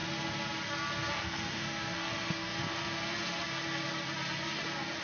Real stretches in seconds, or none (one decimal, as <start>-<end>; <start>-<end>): 0.0-1.1; 2.5-5.0